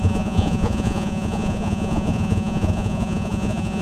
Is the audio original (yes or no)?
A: no